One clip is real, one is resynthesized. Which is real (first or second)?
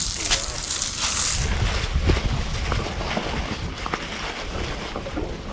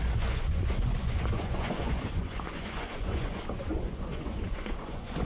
first